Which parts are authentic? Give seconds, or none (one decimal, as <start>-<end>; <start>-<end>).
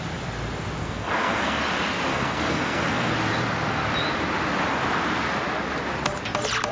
0.0-0.8; 1.6-2.1; 3.1-6.7